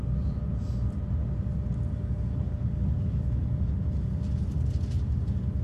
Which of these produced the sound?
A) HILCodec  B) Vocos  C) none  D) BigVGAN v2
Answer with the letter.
C